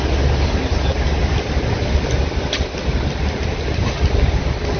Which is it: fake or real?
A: real